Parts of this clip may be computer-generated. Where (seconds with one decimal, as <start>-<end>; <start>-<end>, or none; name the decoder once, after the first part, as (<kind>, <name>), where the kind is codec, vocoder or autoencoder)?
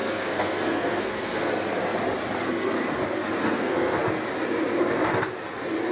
0.0-1.5 (codec, SNAC); 3.4-4.0